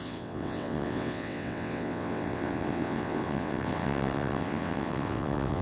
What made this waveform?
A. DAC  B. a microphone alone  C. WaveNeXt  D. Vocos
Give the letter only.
C